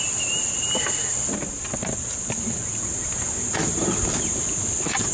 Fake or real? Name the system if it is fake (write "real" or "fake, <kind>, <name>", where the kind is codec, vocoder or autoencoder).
real